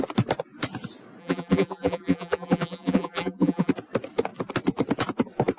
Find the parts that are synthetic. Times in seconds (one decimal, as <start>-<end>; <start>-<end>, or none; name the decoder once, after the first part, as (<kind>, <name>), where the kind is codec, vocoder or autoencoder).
1.2-3.7 (vocoder, BigVGAN v2)